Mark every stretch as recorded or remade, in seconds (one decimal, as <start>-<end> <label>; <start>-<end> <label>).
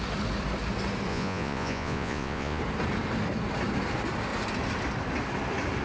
0.0-1.1 recorded; 1.1-2.6 remade; 2.6-5.8 recorded